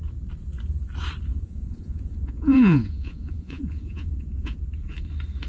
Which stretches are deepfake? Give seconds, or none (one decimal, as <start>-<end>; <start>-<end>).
1.3-4.6